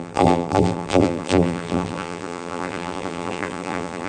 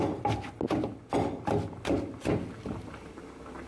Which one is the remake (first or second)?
first